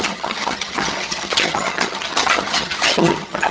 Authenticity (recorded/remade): remade